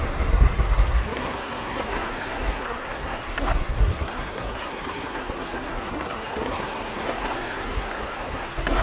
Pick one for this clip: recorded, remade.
remade